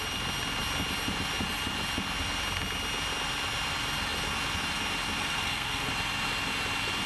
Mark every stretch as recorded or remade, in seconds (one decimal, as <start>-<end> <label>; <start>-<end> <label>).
0.0-5.2 recorded; 5.2-5.9 remade; 5.9-7.1 recorded

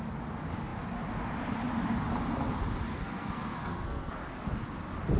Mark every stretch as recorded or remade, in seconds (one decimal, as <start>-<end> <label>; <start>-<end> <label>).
0.0-2.9 recorded; 2.9-4.1 remade; 4.1-5.2 recorded

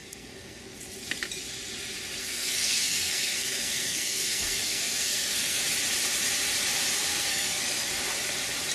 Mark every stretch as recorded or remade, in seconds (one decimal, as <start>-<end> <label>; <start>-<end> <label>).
0.0-0.8 remade; 0.8-2.2 recorded; 2.2-5.6 remade; 5.6-7.1 recorded; 7.1-7.9 remade; 7.9-8.7 recorded

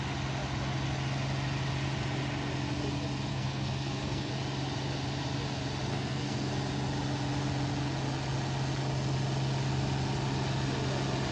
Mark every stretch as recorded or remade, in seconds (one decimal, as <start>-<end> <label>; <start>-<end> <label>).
0.0-3.3 recorded; 3.3-4.3 remade; 4.3-5.9 recorded; 5.9-6.5 remade; 6.5-11.3 recorded

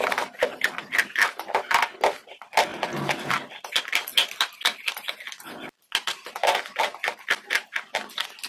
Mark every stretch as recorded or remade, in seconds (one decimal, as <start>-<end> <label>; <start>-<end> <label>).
0.0-8.5 recorded